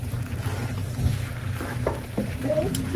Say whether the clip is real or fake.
fake